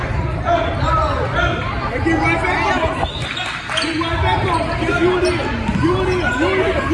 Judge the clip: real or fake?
real